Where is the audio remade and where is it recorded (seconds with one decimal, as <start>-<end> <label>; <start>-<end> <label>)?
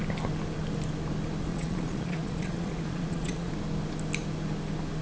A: 0.0-1.5 recorded; 1.5-3.5 remade; 3.5-5.0 recorded